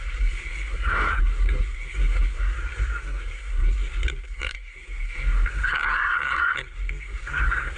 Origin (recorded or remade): remade